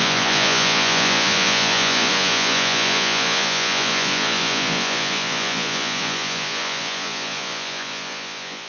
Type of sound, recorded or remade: remade